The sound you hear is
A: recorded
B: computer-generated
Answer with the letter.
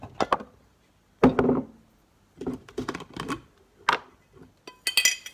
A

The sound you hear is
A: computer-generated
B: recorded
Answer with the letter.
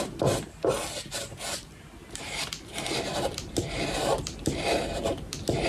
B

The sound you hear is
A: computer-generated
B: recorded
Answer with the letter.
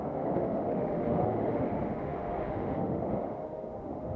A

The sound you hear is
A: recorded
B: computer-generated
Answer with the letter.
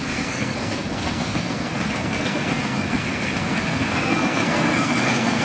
B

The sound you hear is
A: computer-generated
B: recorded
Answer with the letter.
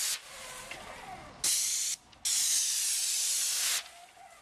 B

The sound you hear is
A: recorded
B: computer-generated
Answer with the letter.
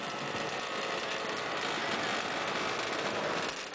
A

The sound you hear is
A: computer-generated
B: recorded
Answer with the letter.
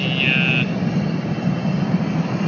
B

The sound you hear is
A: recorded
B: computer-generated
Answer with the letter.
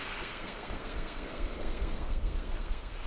B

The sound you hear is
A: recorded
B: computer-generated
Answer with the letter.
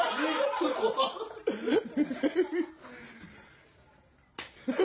A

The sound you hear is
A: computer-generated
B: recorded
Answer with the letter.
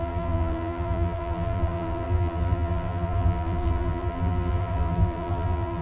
A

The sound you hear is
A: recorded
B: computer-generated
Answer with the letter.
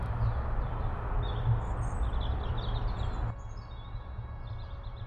A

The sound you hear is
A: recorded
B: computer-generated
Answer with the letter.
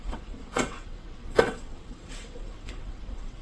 B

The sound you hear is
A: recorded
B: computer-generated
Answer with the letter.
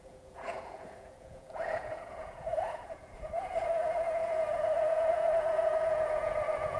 B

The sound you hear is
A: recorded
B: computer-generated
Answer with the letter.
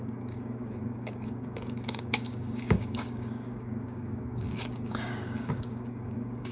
B